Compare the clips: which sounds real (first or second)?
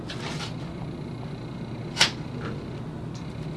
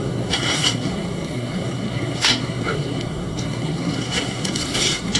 first